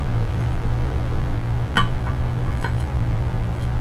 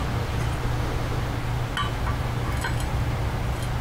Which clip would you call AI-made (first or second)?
first